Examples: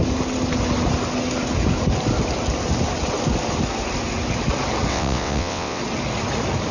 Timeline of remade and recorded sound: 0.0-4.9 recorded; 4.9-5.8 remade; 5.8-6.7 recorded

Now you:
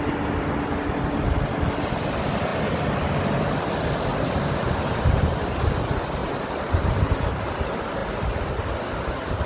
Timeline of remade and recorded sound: 0.0-4.1 recorded; 4.1-5.7 remade; 5.7-6.2 recorded; 6.2-6.8 remade; 6.8-9.5 recorded

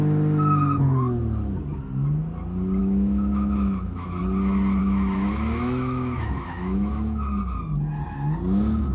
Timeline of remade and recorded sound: 0.0-2.8 recorded; 2.8-4.2 remade; 4.2-4.8 recorded; 4.8-7.4 remade; 7.4-8.9 recorded